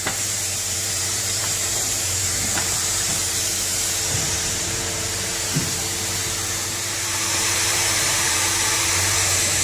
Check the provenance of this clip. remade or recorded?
remade